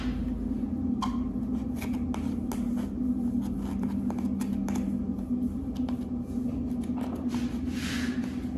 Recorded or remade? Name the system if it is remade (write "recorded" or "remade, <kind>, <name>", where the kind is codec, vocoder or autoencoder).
recorded